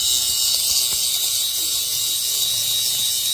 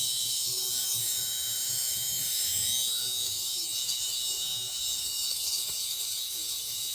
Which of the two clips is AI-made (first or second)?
second